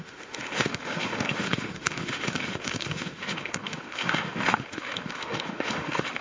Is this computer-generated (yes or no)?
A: yes